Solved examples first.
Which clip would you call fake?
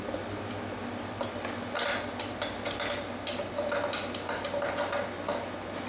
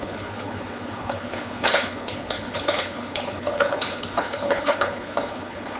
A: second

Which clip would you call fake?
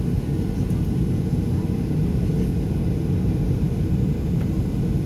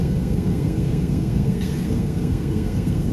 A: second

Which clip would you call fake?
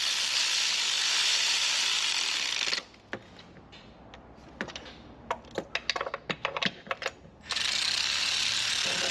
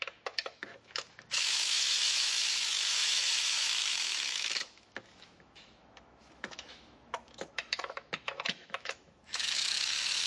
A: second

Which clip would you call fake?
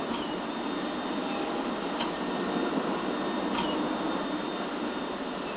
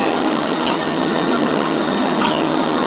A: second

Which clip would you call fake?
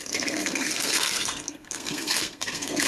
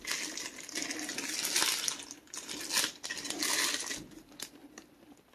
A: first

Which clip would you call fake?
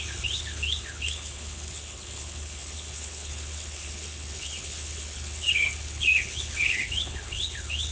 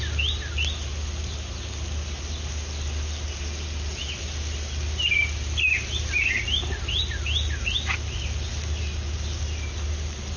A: first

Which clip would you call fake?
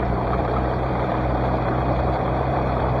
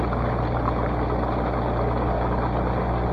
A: first